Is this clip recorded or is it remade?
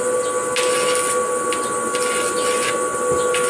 recorded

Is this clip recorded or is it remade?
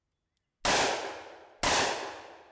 recorded